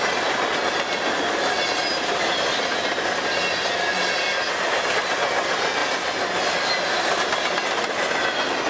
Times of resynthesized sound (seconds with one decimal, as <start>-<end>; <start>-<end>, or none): none